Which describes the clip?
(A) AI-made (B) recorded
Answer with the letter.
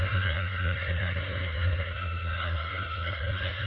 A